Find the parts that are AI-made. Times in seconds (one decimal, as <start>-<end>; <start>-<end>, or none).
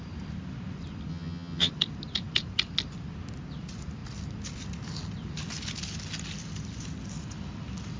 1.1-1.7